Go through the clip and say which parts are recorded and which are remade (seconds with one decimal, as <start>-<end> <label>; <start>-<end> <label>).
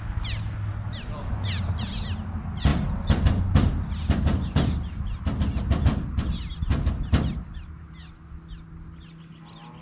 0.0-9.8 recorded